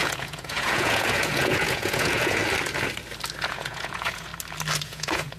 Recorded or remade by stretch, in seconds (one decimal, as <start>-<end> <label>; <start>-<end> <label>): 0.0-2.4 remade; 2.4-3.4 recorded; 3.4-4.3 remade; 4.3-4.8 recorded; 4.8-5.4 remade